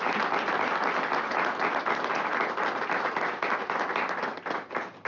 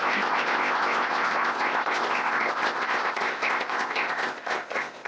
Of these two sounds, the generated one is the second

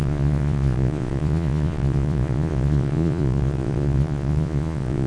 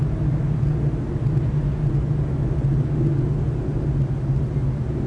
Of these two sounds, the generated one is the first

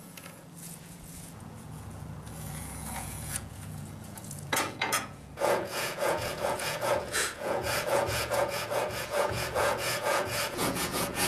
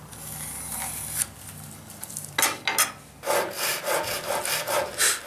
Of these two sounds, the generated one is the first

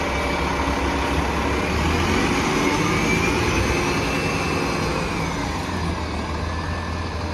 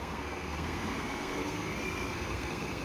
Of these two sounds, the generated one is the second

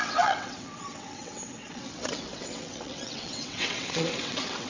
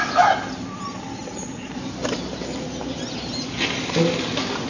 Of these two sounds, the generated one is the first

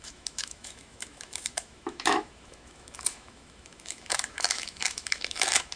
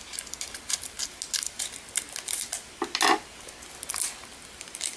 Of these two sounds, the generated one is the first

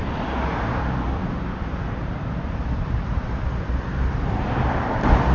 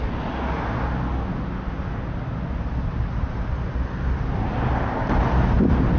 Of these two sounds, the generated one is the first